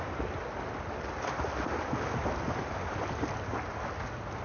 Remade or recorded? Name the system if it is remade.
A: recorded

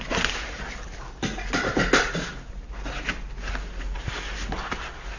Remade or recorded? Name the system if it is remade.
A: recorded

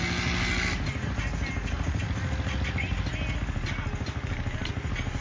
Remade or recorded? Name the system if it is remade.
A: recorded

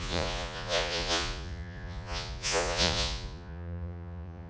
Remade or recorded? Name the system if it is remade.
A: remade, vocoder, Vocos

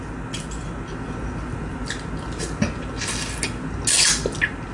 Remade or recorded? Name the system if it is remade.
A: recorded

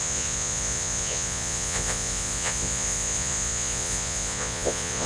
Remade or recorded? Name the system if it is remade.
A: remade, vocoder, Vocos